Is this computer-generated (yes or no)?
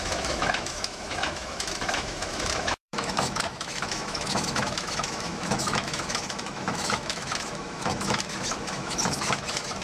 yes